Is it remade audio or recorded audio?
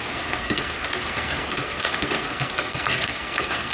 remade